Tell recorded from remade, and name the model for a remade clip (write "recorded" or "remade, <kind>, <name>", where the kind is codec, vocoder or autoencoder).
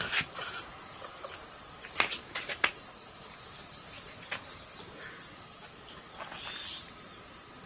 remade, vocoder, BigVGAN v2